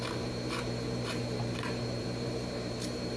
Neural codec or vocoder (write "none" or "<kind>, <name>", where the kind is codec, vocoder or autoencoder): vocoder, BigVGAN v2